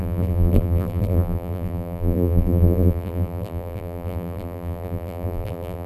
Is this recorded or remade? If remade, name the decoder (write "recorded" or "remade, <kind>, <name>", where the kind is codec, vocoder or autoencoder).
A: remade, vocoder, BigVGAN v2